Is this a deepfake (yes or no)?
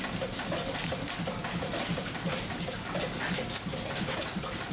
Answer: no